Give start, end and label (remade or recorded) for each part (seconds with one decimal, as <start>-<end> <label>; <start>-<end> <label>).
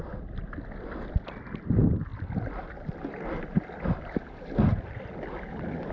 0.0-5.9 recorded